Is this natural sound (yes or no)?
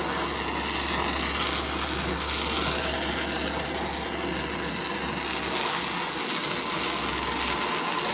yes